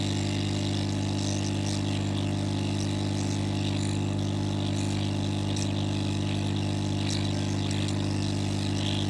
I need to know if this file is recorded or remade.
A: recorded